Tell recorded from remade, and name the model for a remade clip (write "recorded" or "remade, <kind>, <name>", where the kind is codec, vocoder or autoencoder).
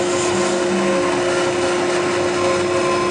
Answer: recorded